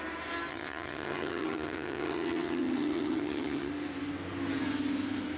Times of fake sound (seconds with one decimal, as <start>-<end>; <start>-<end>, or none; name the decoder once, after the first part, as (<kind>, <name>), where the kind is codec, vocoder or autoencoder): 0.5-3.7 (vocoder, HiFi-GAN)